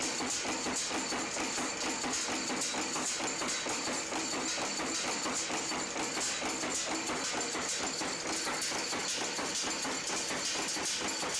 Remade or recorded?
recorded